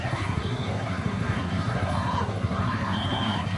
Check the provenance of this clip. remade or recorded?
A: remade